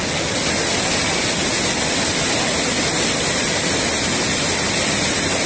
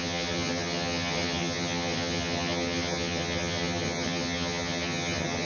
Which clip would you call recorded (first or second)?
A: first